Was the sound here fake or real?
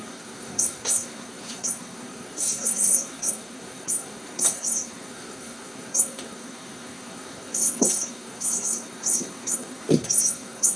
fake